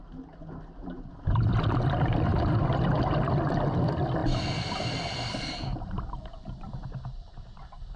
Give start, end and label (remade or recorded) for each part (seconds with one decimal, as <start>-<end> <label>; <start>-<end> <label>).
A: 0.0-8.0 recorded